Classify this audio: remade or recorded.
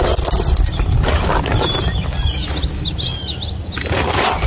recorded